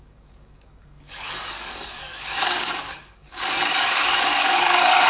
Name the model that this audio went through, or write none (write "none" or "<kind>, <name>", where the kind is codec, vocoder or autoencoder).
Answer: codec, DAC